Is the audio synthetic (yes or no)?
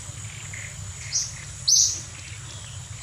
no